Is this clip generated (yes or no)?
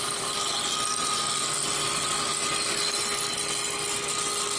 no